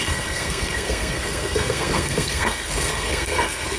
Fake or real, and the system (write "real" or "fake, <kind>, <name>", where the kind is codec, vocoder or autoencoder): fake, codec, SNAC